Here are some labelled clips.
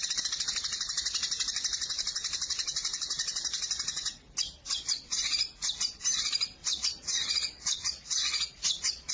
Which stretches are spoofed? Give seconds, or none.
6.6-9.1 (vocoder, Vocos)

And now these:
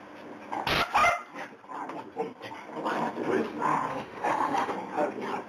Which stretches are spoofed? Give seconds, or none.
3.9-4.7 (autoencoder, DAC-VAE)

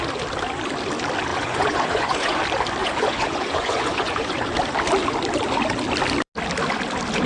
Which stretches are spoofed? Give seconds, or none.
1.3-2.4 (vocoder, Vocos); 2.8-4.5

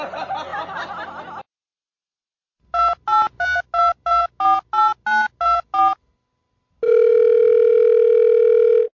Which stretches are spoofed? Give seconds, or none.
none

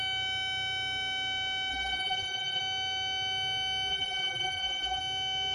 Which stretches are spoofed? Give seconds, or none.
1.7-2.6 (vocoder, BigVGAN v2); 3.9-5.0

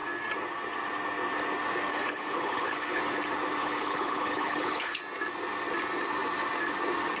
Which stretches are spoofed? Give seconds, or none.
1.9-3.0 (codec, HILCodec); 3.6-5.0